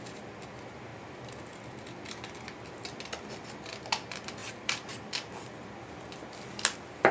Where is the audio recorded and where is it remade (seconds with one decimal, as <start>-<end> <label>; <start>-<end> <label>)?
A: 0.0-4.4 recorded; 4.4-5.0 remade; 5.0-7.1 recorded